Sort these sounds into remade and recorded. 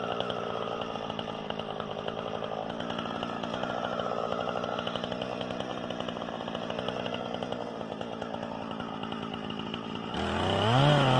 recorded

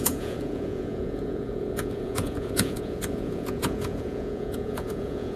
remade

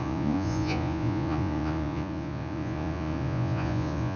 remade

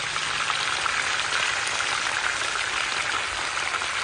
recorded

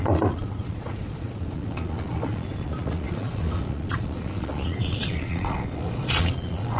remade